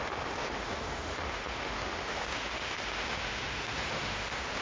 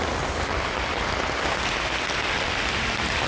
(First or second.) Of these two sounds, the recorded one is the second